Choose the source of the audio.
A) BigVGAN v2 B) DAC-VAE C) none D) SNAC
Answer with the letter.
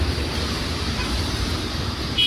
A